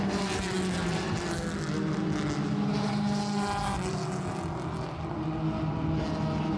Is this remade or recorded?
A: recorded